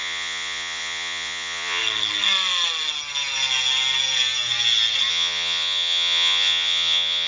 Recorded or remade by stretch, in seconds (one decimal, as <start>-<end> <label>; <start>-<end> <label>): 0.0-1.8 remade; 1.8-5.1 recorded; 5.1-7.3 remade